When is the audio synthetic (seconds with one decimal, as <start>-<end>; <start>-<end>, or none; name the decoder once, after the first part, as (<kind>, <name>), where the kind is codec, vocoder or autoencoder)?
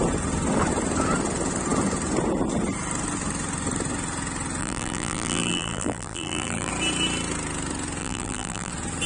4.6-6.7 (vocoder, BigVGAN v2); 8.0-8.7